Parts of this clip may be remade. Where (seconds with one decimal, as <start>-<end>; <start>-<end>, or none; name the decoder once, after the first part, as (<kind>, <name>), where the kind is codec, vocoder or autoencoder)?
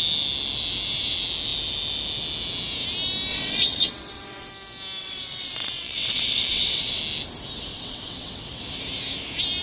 3.3-4.5 (vocoder, WaveNeXt); 5.0-7.0; 7.7-8.6